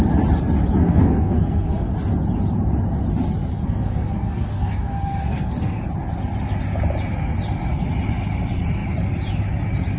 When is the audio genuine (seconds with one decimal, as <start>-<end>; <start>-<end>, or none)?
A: 0.0-0.8; 1.9-3.5; 5.8-10.0